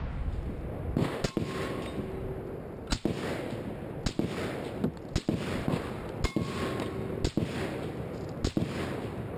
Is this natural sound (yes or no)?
yes